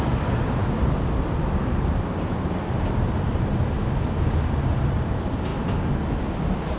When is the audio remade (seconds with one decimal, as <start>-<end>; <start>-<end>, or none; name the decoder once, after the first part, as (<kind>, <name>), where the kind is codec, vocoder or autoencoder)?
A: none